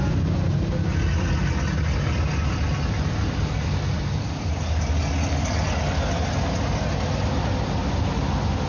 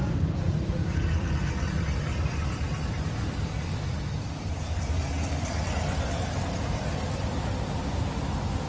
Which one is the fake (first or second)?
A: second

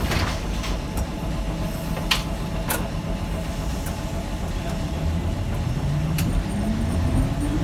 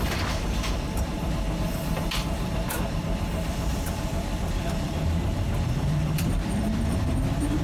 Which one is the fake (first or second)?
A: second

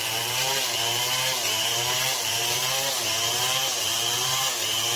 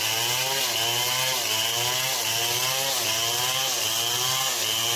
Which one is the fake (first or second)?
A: first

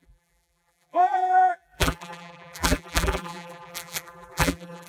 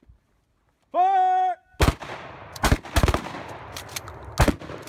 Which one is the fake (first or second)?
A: first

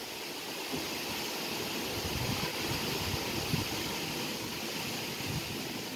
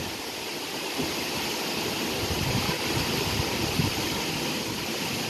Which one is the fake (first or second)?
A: second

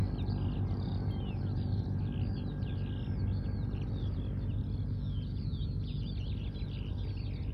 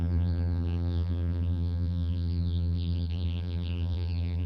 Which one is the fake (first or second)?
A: second